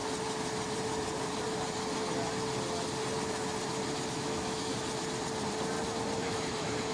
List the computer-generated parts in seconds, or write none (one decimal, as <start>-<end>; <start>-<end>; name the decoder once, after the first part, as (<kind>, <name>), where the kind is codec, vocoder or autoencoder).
4.1-4.7 (autoencoder, DAC-VAE); 6.2-6.9